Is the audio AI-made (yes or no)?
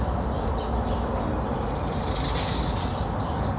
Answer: no